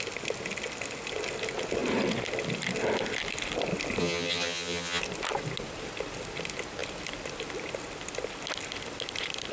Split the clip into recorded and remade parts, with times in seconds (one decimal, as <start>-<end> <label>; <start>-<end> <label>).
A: 0.0-4.0 recorded; 4.0-5.0 remade; 5.0-9.5 recorded